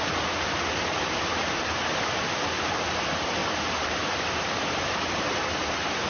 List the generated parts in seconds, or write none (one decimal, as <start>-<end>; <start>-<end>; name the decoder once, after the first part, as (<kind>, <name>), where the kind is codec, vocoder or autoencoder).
3.4-6.1 (vocoder, BigVGAN v2)